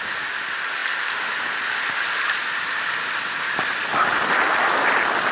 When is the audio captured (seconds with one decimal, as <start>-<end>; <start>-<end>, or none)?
0.0-5.3